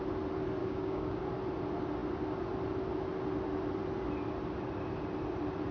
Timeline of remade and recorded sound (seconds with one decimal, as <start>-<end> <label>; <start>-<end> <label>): 0.0-0.6 recorded; 0.6-1.2 remade; 1.2-5.7 recorded